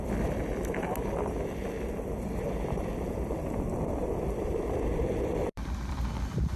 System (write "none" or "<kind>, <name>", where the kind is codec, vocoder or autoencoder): vocoder, BigVGAN v2